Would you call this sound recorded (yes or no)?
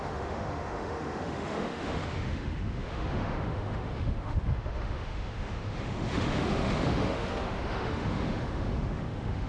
no